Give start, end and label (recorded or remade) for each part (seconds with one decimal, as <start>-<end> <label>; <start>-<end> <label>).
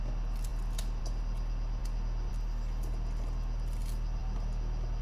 0.0-5.0 recorded